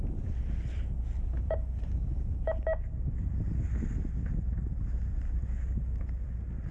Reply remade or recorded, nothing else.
recorded